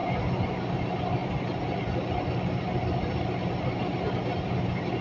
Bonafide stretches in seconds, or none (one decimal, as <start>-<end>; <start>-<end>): 0.0-5.0